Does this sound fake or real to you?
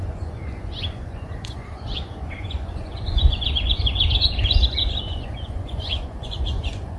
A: fake